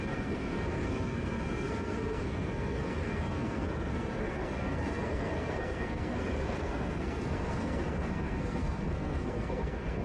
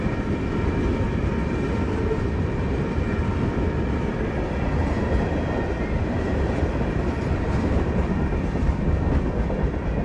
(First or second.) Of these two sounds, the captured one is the second